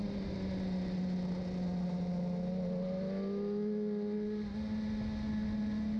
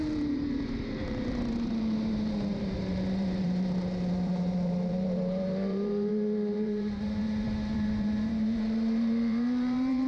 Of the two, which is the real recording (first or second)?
first